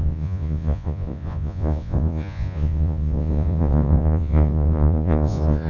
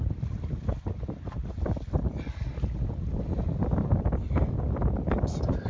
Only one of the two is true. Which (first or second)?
second